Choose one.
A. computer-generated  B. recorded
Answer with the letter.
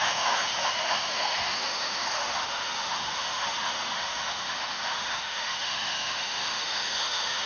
A